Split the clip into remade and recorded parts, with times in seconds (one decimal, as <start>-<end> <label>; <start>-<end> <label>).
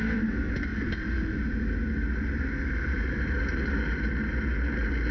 0.0-5.1 remade